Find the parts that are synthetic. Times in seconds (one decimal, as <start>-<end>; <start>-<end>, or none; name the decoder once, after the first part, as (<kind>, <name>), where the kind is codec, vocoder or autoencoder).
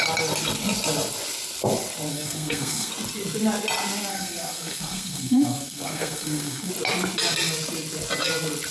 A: 2.1-2.9 (codec, SNAC); 4.1-6.7